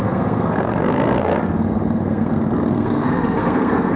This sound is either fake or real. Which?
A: fake